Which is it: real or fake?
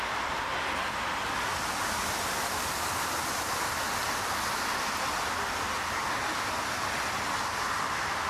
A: real